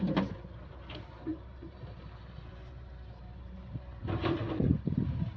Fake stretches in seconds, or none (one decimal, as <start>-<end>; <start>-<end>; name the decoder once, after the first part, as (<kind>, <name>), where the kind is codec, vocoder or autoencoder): 0.0-5.4 (vocoder, BigVGAN v2)